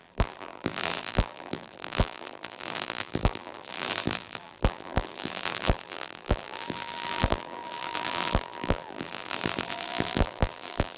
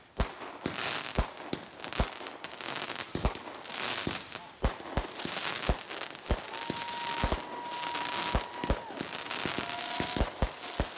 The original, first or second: second